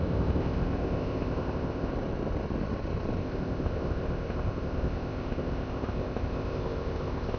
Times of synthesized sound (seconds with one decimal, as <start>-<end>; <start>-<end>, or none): 0.0-1.9; 3.2-7.4